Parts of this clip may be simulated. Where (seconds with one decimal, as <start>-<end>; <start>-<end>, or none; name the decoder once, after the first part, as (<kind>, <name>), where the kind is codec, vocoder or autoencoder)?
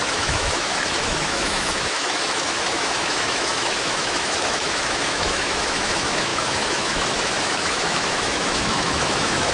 0.0-9.5 (autoencoder, DAC-VAE)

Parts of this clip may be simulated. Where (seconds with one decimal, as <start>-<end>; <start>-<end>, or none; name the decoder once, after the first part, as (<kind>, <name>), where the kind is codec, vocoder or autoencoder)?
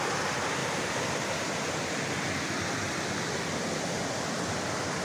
none